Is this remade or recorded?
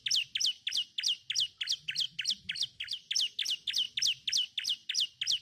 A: recorded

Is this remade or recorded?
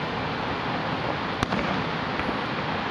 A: recorded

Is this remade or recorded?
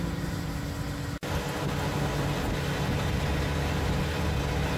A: recorded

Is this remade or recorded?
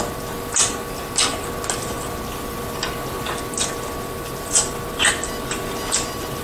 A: recorded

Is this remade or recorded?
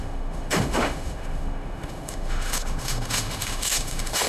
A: remade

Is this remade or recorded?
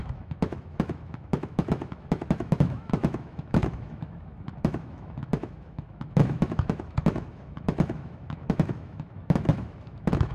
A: remade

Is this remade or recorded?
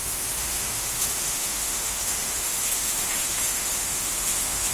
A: remade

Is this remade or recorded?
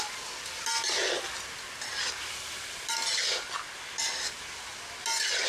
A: recorded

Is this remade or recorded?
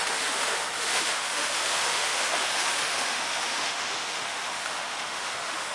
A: remade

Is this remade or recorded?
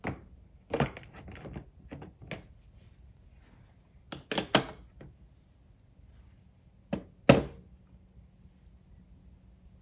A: recorded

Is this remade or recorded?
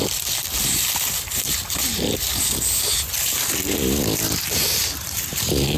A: recorded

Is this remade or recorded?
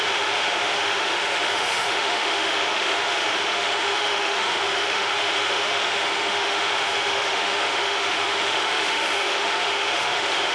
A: remade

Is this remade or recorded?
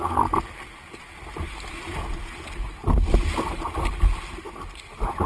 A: recorded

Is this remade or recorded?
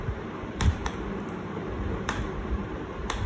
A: recorded